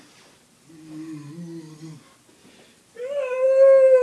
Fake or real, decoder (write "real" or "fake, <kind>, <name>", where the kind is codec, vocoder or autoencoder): real